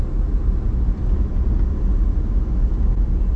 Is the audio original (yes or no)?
yes